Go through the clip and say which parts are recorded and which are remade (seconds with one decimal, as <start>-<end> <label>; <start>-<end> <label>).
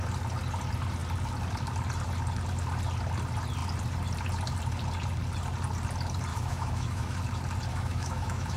0.0-6.3 recorded; 6.3-7.2 remade; 7.2-7.7 recorded; 7.7-8.6 remade